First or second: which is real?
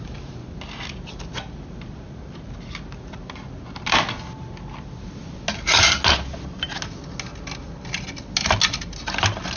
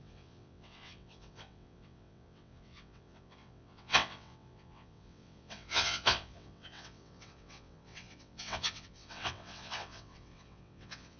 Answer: first